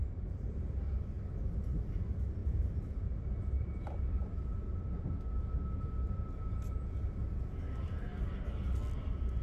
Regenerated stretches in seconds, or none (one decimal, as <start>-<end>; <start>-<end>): 0.0-0.8; 2.4-4.2